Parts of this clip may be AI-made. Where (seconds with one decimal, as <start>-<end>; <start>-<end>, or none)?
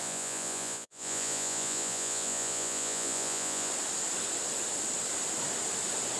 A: 0.0-3.7